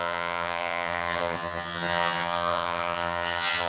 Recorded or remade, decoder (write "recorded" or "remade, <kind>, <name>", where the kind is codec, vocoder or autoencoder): remade, vocoder, HiFi-GAN